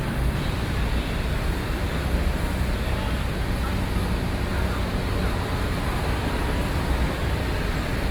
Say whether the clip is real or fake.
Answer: real